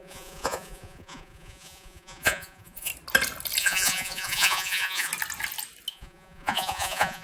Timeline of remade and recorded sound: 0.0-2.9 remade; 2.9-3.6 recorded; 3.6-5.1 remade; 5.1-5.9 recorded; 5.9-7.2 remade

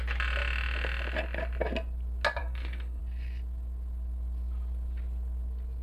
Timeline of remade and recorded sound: 0.0-2.4 recorded; 2.4-3.0 remade; 3.0-5.8 recorded

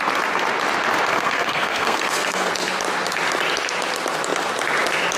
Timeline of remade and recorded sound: 0.0-1.1 recorded; 1.1-2.5 remade; 2.5-5.2 recorded

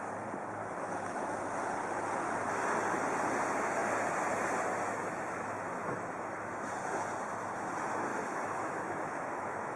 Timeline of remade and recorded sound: 0.0-0.6 recorded; 0.6-1.6 remade; 1.6-5.1 recorded; 5.1-6.7 remade; 6.7-8.1 recorded; 8.1-9.8 remade

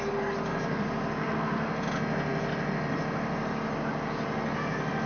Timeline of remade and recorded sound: 0.0-1.2 recorded; 1.2-1.7 remade; 1.7-5.1 recorded

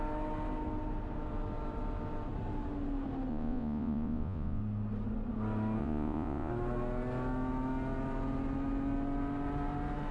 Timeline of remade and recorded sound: 0.0-3.3 recorded; 3.3-4.6 remade; 4.6-5.8 recorded; 5.8-6.5 remade; 6.5-10.1 recorded

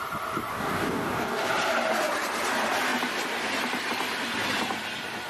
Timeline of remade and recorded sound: 0.0-0.5 recorded; 0.5-1.5 remade; 1.5-5.3 recorded